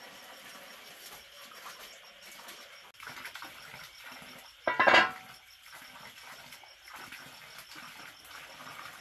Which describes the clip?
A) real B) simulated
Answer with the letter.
A